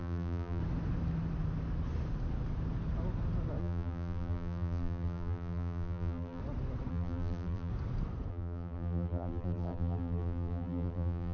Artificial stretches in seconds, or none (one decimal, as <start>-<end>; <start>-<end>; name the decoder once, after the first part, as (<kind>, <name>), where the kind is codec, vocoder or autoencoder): 0.0-0.6 (vocoder, BigVGAN v2); 3.6-6.4; 6.9-7.7; 8.3-11.3